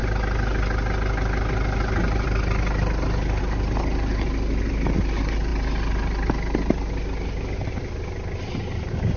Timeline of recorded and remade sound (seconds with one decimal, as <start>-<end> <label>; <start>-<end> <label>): 0.0-9.2 recorded